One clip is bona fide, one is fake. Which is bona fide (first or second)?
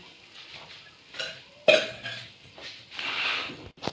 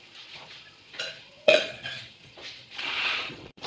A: first